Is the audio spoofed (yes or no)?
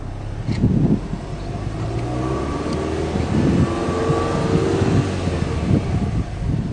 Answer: no